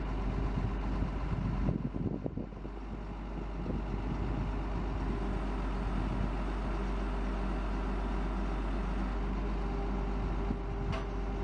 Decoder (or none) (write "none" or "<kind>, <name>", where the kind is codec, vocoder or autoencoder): none